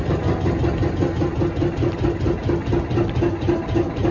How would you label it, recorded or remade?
recorded